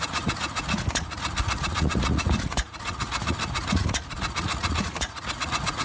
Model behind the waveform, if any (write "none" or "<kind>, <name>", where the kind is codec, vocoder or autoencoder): vocoder, Vocos